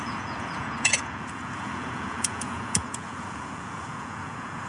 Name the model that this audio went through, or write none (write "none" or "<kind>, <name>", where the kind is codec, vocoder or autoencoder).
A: vocoder, Vocos